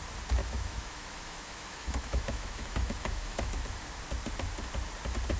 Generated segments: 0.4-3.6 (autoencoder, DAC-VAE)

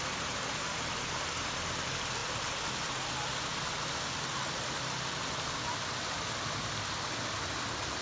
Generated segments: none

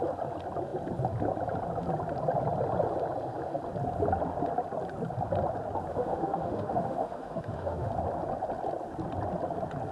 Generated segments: 5.9-7.9 (autoencoder, DAC-VAE)